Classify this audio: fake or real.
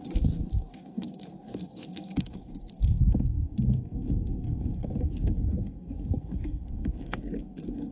fake